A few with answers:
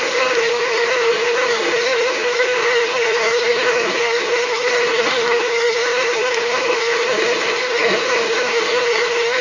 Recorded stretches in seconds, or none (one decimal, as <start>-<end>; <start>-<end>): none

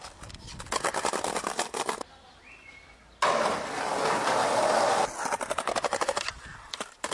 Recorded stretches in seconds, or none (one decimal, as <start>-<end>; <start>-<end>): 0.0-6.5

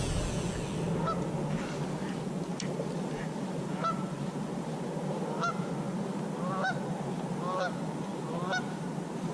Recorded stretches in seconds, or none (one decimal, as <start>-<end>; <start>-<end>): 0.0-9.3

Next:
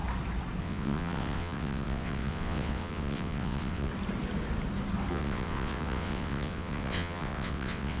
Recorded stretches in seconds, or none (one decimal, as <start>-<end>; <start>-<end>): 0.0-0.6; 3.9-5.1